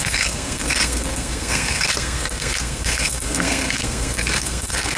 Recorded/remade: remade